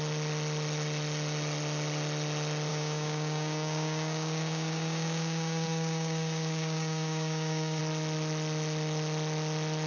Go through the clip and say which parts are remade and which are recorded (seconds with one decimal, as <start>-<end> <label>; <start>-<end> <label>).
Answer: 0.0-2.7 recorded; 2.7-7.8 remade; 7.8-9.9 recorded

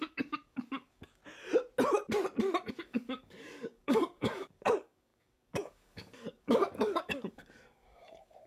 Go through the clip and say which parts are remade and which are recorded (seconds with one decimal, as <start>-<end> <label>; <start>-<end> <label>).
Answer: 0.0-1.2 remade; 1.2-2.7 recorded; 2.7-8.5 remade

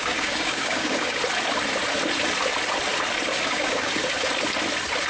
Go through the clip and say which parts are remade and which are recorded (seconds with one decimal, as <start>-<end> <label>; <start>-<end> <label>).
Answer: 0.0-1.2 remade; 1.2-3.3 recorded; 3.3-3.9 remade; 3.9-5.1 recorded

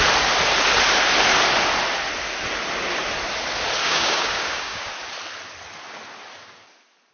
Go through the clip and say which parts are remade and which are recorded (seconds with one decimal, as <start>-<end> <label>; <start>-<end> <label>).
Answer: 0.0-3.8 recorded; 3.8-4.9 remade; 4.9-7.1 recorded

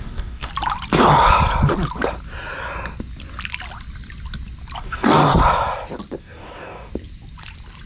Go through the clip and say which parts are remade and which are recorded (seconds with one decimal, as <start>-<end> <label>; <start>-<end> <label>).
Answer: 0.0-0.5 remade; 0.5-4.8 recorded; 4.8-5.2 remade; 5.2-6.2 recorded; 6.2-6.9 remade; 6.9-7.9 recorded

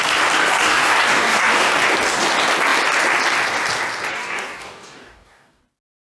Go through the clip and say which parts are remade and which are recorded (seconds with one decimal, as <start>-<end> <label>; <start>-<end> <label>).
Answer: 0.0-0.4 recorded; 0.4-1.9 remade; 1.9-4.1 recorded; 4.1-5.6 remade; 5.6-6.1 recorded

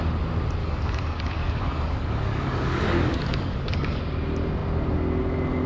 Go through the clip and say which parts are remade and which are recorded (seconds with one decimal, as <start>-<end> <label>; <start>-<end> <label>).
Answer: 0.0-0.6 recorded; 0.6-4.0 remade; 4.0-5.7 recorded

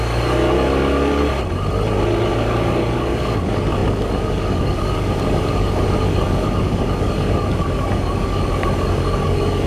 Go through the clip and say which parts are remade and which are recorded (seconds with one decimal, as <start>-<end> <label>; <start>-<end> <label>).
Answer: 0.0-1.2 remade; 1.2-2.3 recorded; 2.3-9.7 remade